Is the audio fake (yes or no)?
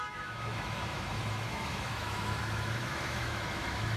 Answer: yes